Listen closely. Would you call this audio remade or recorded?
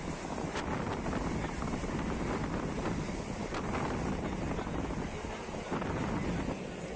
recorded